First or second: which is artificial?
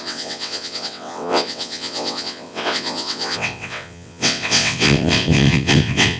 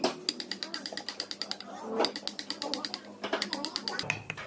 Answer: first